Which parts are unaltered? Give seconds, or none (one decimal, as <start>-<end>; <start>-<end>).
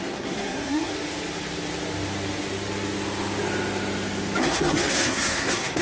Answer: 0.9-4.4